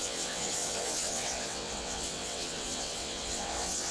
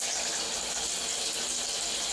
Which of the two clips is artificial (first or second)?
first